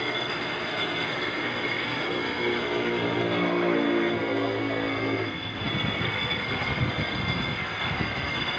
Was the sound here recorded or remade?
remade